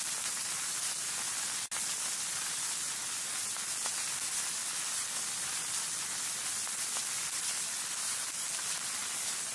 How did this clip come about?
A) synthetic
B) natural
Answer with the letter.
B